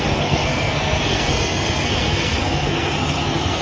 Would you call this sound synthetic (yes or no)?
yes